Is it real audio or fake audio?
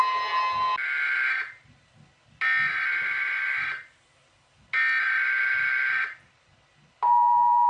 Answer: real